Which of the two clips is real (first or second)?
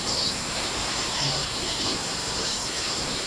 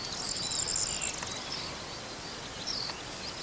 second